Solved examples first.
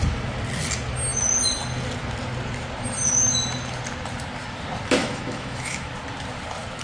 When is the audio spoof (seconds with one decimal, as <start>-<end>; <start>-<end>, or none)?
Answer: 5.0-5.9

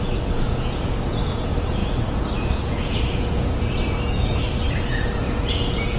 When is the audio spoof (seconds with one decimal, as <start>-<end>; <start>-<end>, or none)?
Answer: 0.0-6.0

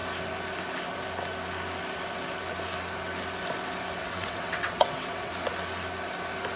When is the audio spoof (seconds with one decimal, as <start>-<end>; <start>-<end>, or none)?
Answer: 4.0-5.3

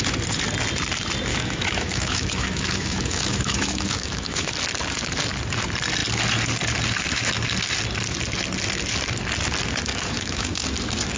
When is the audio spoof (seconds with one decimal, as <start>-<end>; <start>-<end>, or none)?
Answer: 1.3-4.5; 9.9-10.5

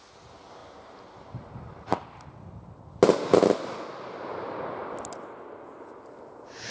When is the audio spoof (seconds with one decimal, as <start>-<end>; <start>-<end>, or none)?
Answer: none

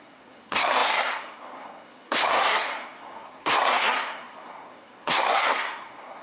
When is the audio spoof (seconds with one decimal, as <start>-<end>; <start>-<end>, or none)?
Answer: 0.0-6.2

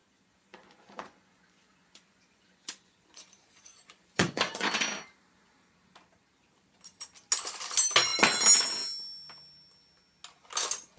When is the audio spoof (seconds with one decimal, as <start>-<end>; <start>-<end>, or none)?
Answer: 0.0-4.7